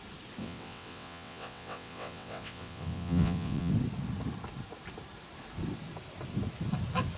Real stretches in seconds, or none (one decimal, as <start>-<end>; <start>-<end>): 0.0-0.4; 3.7-7.2

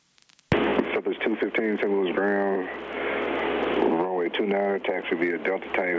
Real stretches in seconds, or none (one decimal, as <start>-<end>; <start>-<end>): 0.0-6.0

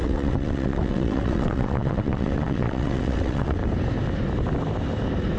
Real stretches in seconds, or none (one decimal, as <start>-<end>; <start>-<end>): 3.6-5.4

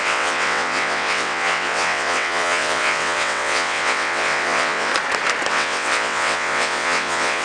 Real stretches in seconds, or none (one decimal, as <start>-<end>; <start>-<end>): 4.9-5.5

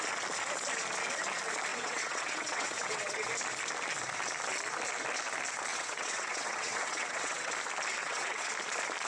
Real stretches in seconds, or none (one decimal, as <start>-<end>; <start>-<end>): 0.0-1.7; 3.3-5.7; 7.5-8.0; 8.5-9.1

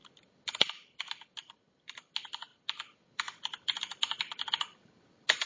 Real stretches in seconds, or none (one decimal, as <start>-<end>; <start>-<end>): 0.0-5.5